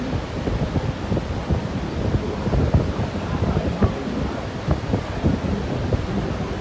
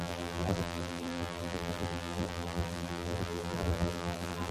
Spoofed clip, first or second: second